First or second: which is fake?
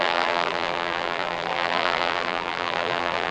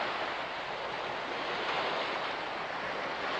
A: first